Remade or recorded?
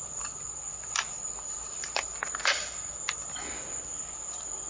recorded